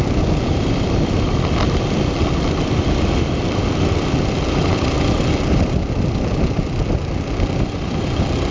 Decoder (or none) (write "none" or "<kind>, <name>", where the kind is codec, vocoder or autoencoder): vocoder, BigVGAN v2